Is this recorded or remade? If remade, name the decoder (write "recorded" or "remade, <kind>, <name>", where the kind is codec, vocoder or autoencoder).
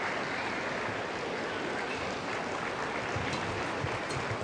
recorded